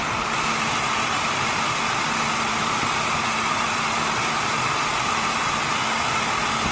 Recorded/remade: recorded